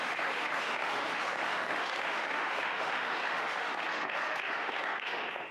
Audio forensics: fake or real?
fake